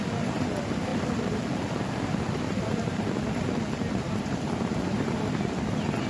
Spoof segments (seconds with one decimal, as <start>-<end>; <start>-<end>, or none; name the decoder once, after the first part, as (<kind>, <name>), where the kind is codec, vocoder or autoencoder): 0.9-4.6 (vocoder, BigVGAN v2)